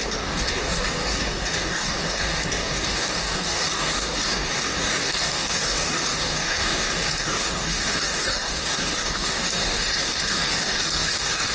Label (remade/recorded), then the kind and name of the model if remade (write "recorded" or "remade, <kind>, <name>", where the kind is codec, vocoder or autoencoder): remade, codec, DAC